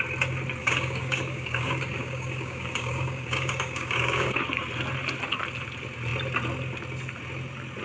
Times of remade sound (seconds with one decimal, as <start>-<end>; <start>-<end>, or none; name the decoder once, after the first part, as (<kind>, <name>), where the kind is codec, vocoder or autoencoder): 0.6-4.4 (codec, DAC)